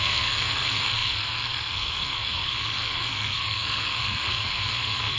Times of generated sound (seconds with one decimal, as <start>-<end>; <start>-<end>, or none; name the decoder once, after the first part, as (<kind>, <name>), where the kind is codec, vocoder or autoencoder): 0.0-5.2 (codec, SNAC)